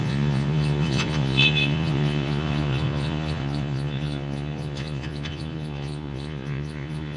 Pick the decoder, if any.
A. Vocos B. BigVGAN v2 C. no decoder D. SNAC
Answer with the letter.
A